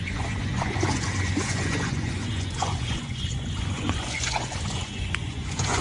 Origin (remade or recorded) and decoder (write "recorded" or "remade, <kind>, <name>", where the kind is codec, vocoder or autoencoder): remade, vocoder, Vocos